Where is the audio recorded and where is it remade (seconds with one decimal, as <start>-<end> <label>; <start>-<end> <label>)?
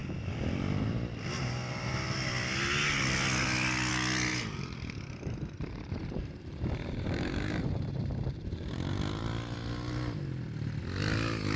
0.0-4.3 recorded; 4.3-9.2 remade; 9.2-11.6 recorded